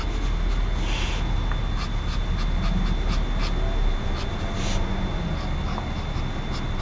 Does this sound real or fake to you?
real